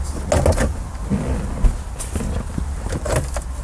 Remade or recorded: recorded